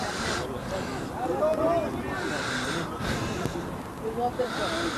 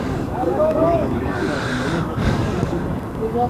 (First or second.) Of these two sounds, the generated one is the second